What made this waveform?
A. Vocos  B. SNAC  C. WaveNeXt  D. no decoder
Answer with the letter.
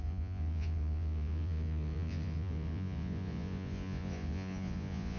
A